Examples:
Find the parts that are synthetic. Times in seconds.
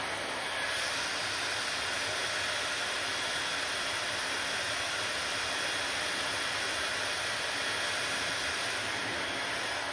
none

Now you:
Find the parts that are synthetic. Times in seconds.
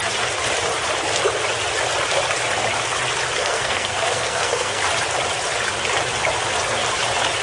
3.4-4.8 (codec, SNAC)